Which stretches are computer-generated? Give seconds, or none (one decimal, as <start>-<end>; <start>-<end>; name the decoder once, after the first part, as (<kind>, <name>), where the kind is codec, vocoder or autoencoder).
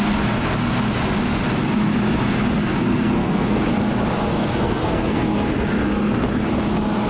2.9-3.6 (codec, SNAC); 4.3-5.2